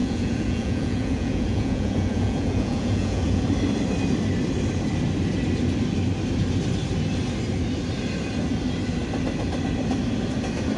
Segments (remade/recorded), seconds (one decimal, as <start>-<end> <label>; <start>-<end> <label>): 0.0-3.4 remade; 3.4-10.8 recorded